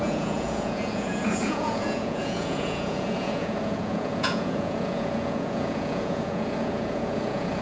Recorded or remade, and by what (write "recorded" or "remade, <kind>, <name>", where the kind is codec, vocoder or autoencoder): remade, vocoder, Vocos